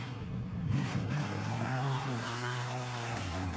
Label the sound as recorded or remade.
remade